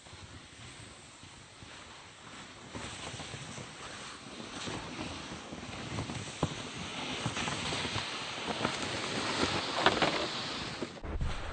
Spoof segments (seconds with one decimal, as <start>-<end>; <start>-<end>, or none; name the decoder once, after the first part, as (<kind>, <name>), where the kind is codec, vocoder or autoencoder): none